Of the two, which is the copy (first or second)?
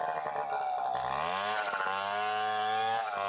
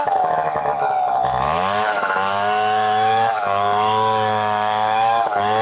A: second